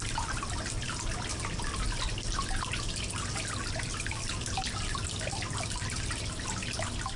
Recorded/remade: recorded